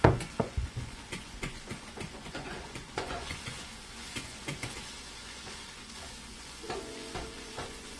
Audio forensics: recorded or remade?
remade